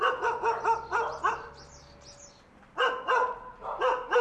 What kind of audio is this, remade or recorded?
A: recorded